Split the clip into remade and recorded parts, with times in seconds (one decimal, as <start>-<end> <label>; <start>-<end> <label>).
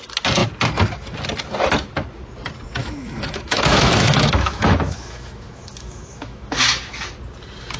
0.0-2.8 recorded; 2.8-6.7 remade; 6.7-7.8 recorded